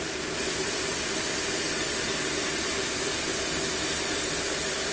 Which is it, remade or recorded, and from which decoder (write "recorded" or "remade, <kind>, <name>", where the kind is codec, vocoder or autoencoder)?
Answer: recorded